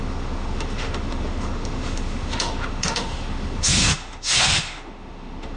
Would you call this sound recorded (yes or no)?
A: no